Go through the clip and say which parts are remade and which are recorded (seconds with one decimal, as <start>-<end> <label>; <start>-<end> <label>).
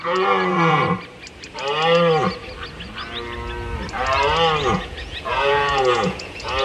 0.0-0.8 remade; 0.8-4.6 recorded; 4.6-6.6 remade